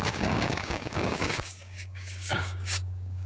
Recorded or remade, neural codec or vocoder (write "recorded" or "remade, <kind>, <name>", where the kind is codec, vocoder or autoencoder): remade, codec, DAC